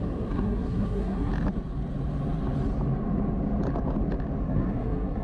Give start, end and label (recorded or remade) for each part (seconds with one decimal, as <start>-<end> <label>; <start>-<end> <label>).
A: 0.0-1.3 remade; 1.3-4.4 recorded; 4.4-5.2 remade